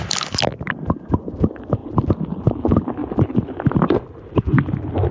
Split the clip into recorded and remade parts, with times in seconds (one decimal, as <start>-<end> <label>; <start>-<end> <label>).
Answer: 0.0-5.1 recorded